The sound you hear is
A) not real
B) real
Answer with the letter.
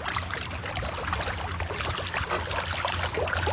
B